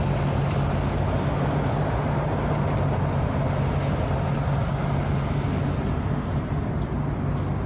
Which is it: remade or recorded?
recorded